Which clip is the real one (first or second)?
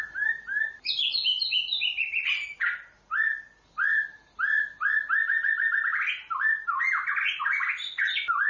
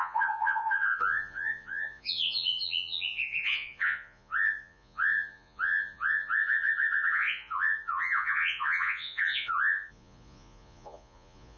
first